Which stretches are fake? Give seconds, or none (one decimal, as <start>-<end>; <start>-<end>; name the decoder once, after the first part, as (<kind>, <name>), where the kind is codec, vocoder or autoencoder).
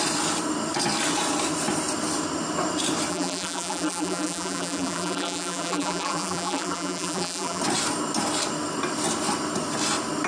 3.1-7.6 (vocoder, BigVGAN v2)